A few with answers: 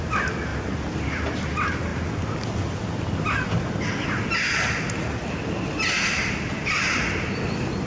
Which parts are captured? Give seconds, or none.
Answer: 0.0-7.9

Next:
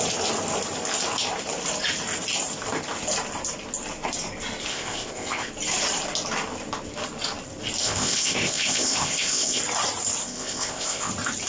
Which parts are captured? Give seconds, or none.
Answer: 0.0-4.7; 5.5-7.8; 9.6-10.2; 11.1-11.5

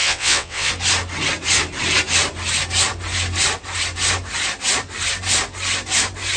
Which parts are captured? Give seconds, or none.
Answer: 0.7-6.4

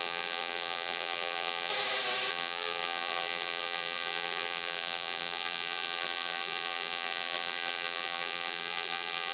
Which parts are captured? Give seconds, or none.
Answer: 1.7-2.3

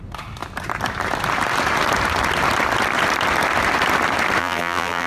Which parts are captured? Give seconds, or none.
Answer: 0.0-4.4